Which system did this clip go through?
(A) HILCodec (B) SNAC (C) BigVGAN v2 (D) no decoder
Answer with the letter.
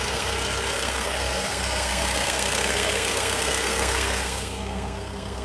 B